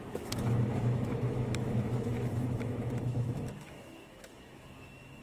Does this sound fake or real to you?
fake